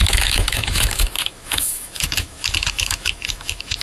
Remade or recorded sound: remade